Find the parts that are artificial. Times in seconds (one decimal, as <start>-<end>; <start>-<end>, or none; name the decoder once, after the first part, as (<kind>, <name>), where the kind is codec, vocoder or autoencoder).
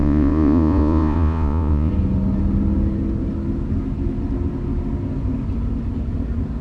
0.0-1.9 (vocoder, Vocos)